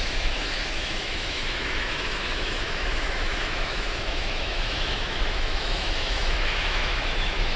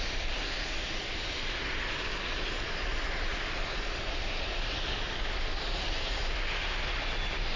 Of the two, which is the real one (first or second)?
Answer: second